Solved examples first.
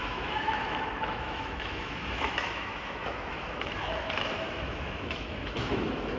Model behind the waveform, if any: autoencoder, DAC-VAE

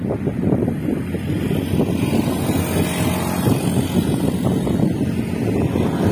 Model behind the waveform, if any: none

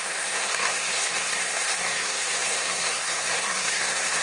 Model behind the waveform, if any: codec, SNAC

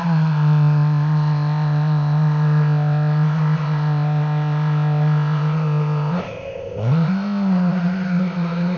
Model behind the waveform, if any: codec, ZipCodec